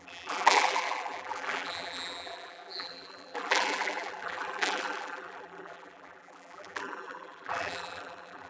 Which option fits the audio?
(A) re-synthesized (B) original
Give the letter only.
A